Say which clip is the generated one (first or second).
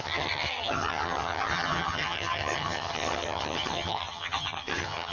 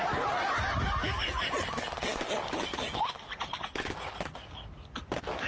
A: first